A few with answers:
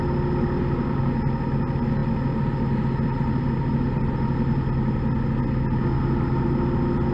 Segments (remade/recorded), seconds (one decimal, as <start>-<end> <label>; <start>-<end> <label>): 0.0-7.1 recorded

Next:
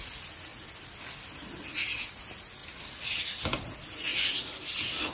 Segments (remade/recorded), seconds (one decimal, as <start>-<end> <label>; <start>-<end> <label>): 0.0-2.6 recorded; 2.6-3.2 remade; 3.2-5.1 recorded

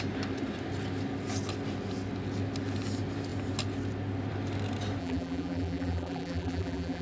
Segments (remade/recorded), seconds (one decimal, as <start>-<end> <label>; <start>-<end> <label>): 0.0-5.0 recorded; 5.0-7.0 remade